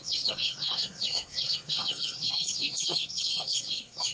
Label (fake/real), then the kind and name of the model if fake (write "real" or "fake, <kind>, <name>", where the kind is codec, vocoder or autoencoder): fake, codec, SNAC